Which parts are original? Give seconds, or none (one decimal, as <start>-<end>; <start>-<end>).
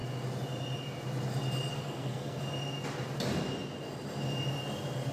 0.0-1.7; 2.4-5.1